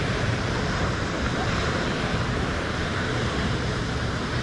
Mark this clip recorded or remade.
remade